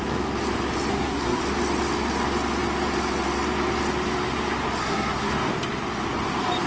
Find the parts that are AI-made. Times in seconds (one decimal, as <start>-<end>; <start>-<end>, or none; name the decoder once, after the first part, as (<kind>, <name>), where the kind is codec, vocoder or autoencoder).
0.9-1.4 (codec, SNAC); 4.8-5.3